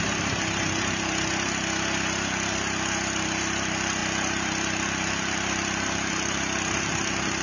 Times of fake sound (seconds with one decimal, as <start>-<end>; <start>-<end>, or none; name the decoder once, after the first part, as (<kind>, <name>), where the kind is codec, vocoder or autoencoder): none